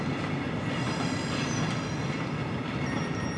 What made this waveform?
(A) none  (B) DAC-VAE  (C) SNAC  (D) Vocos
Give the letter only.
A